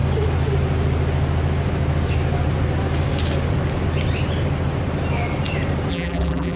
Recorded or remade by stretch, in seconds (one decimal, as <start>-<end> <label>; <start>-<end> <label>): 0.0-5.9 recorded; 5.9-6.6 remade